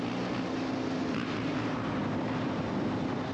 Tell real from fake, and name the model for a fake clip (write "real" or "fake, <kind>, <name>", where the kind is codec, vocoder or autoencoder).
real